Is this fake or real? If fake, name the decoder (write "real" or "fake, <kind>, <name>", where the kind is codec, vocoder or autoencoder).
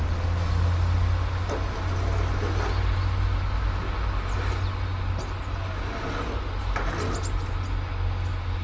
real